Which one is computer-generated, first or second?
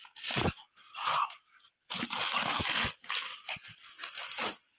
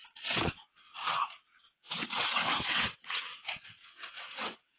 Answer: second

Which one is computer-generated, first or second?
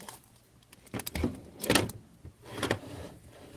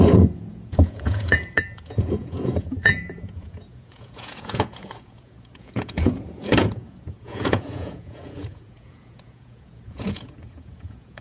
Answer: second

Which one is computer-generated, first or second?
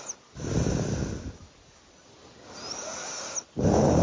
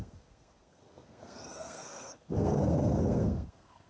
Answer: second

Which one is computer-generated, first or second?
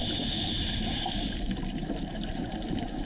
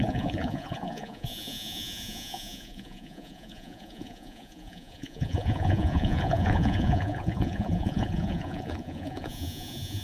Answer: second